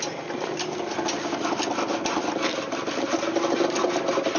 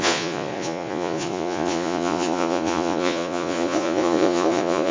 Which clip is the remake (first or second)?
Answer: second